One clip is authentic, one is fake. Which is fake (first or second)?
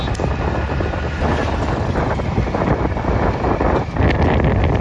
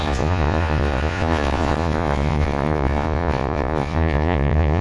second